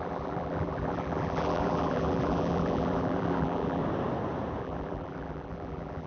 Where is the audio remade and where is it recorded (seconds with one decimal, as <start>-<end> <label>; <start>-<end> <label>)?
0.0-3.8 remade; 3.8-4.6 recorded; 4.6-6.1 remade